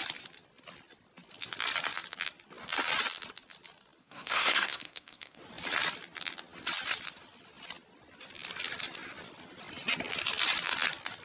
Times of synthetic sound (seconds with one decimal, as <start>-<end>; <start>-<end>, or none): 4.0-5.4